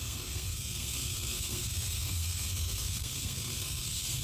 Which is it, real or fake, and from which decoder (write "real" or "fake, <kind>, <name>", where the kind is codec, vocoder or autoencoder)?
fake, codec, SNAC